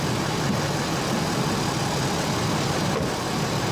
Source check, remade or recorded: recorded